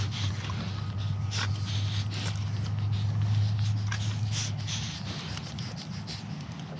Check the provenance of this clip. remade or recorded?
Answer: recorded